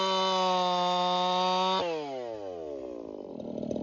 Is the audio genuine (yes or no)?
yes